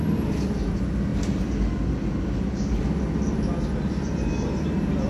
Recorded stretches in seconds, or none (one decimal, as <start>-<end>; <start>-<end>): 0.0-5.1